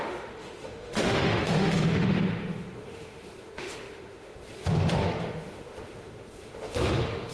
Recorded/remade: remade